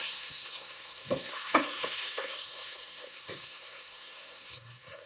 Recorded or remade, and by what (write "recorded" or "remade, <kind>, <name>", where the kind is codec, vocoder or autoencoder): remade, codec, SNAC